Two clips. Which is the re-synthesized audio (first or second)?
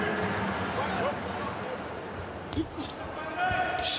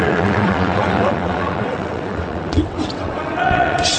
second